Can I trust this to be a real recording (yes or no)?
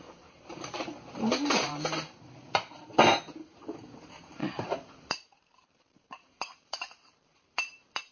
no